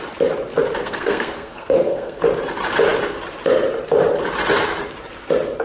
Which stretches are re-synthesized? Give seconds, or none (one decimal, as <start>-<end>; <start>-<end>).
0.8-2.2